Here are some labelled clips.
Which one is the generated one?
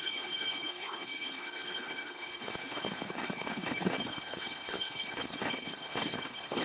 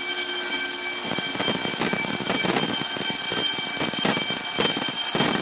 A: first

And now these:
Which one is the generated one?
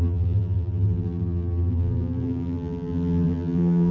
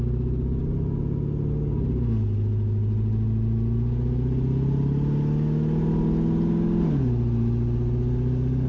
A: first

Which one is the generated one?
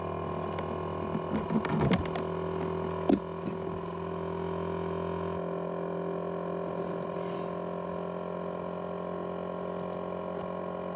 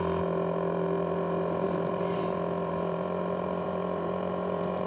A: second